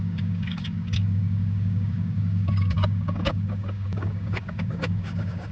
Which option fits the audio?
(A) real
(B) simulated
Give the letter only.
B